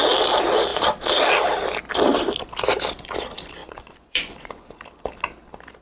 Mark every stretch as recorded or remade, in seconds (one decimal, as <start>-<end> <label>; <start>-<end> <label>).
0.0-3.6 recorded; 3.6-4.8 remade; 4.8-5.8 recorded